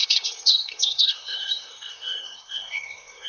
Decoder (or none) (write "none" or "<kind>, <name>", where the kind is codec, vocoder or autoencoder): codec, SNAC